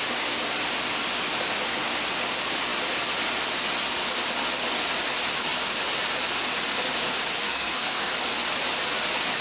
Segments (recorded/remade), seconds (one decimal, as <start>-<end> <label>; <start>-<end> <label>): 0.0-7.4 recorded; 7.4-8.1 remade; 8.1-9.4 recorded